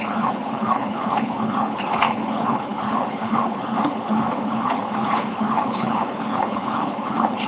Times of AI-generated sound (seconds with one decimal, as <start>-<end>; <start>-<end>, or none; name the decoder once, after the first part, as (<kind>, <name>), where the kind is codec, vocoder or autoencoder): 0.0-7.5 (codec, HILCodec)